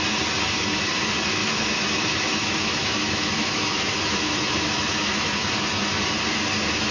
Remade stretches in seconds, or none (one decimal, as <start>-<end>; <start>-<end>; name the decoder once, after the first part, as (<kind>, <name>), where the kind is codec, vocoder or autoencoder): 1.4-5.5 (autoencoder, DAC-VAE)

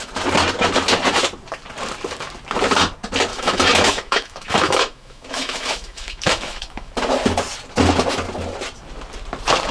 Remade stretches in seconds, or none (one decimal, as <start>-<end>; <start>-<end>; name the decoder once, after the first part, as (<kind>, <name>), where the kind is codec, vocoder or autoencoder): 3.3-6.9 (autoencoder, DAC-VAE)

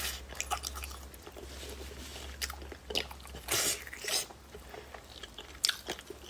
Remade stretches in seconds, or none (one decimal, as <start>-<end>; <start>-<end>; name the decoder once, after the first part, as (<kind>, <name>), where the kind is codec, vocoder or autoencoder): none

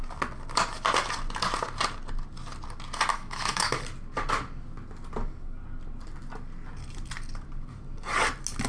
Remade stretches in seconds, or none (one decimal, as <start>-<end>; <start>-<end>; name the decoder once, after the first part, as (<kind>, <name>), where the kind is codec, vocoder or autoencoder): 3.1-3.8 (autoencoder, DAC-VAE)

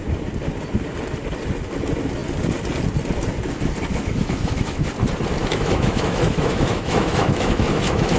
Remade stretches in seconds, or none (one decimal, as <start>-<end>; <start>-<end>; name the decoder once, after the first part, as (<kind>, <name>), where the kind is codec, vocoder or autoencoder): 3.9-4.9 (autoencoder, DAC-VAE); 5.4-8.2